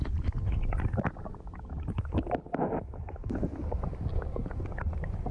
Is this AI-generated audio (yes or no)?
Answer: no